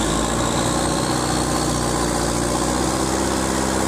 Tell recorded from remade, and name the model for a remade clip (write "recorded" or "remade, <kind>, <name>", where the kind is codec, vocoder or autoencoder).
recorded